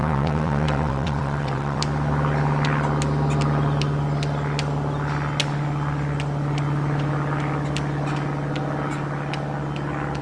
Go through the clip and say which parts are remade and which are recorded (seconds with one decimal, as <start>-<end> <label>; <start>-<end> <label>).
0.0-1.8 remade; 1.8-10.2 recorded